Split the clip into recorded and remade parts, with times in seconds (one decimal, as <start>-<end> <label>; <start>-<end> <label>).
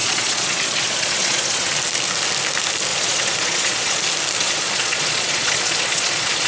0.0-1.7 remade; 1.7-2.9 recorded; 2.9-4.0 remade; 4.0-4.4 recorded; 4.4-6.5 remade